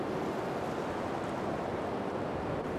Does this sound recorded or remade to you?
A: recorded